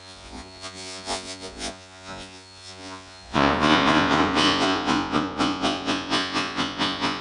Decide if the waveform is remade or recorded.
remade